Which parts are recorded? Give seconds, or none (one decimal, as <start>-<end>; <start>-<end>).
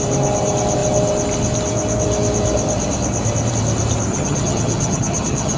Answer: 0.0-4.1